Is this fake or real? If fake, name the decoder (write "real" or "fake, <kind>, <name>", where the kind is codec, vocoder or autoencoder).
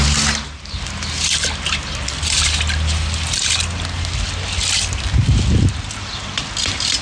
real